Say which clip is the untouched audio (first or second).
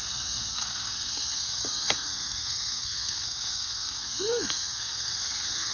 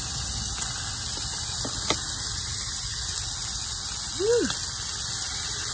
second